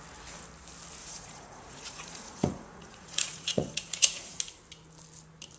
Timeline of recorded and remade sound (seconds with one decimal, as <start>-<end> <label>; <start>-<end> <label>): 0.0-1.0 recorded; 1.0-4.4 remade; 4.4-5.6 recorded